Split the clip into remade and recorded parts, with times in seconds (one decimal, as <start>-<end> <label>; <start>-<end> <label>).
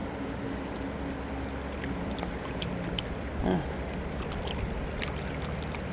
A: 0.0-5.9 recorded